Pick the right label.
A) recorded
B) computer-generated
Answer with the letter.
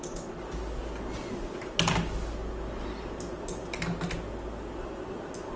A